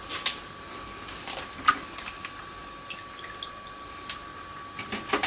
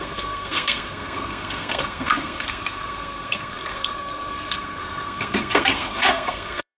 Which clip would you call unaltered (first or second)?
first